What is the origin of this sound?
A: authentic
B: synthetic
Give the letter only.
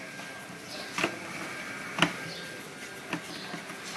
A